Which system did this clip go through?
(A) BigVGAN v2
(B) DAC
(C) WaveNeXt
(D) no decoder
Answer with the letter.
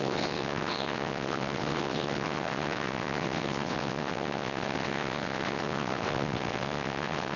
C